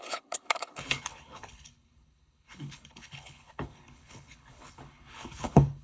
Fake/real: fake